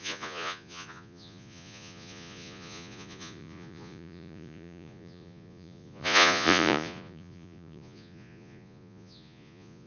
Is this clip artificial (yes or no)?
yes